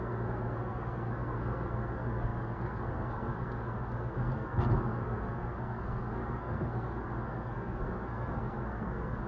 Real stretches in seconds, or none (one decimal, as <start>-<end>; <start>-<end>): none